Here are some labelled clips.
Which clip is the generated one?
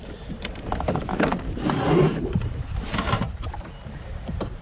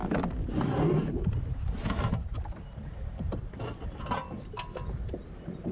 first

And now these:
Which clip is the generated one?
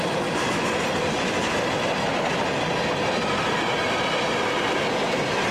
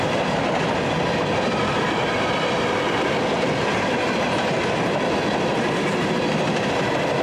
second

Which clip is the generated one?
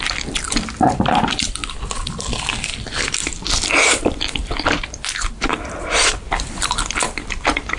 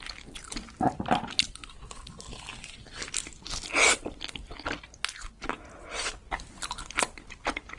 first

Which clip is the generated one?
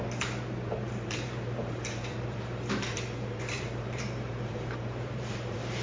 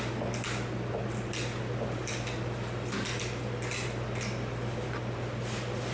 first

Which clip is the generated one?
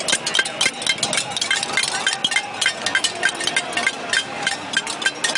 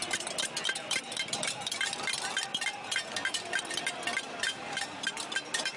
second